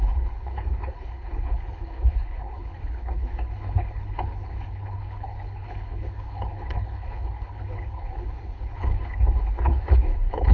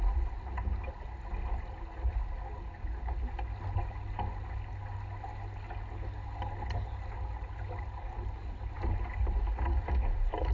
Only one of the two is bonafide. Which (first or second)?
second